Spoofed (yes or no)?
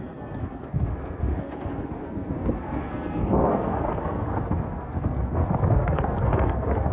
yes